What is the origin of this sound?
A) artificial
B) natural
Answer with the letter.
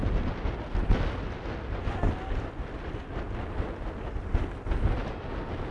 B